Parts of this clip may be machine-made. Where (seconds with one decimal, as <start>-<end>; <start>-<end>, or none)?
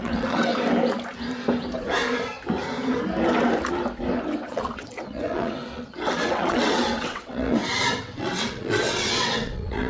0.0-0.5; 4.2-9.9